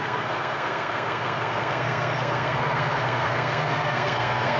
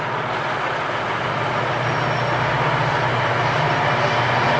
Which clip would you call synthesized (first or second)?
first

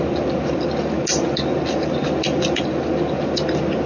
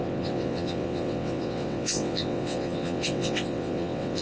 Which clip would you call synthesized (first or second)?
second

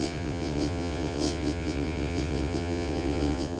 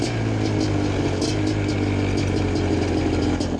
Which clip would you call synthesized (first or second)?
first